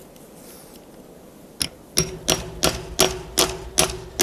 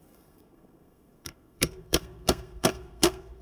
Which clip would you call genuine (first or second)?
first